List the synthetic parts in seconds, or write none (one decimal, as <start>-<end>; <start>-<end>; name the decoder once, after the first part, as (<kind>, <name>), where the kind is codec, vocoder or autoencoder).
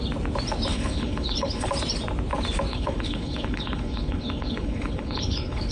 0.7-1.7 (codec, HILCodec); 2.7-5.7